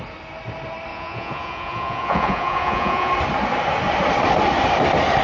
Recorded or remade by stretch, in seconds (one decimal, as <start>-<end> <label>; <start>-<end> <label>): 0.0-0.9 recorded; 0.9-3.1 remade; 3.1-5.2 recorded